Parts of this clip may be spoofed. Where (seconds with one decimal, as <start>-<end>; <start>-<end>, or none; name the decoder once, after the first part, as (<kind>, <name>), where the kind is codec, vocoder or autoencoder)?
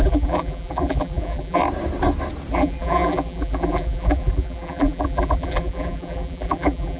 0.0-1.6 (vocoder, BigVGAN v2); 2.5-7.0